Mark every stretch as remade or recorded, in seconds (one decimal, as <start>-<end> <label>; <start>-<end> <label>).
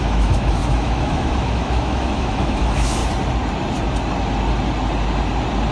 0.0-3.0 remade; 3.0-5.7 recorded